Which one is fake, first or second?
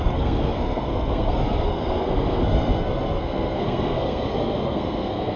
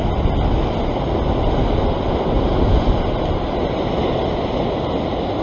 first